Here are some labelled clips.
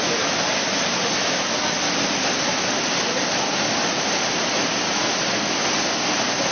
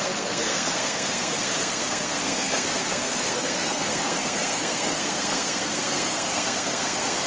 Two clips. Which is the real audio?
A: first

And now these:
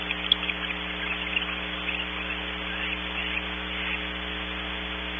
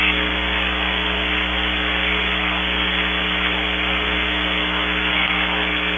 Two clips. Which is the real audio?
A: first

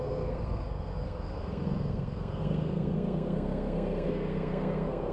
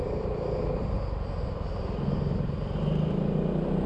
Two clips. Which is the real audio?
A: second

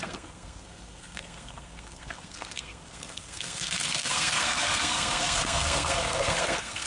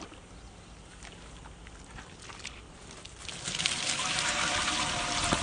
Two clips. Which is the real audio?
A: second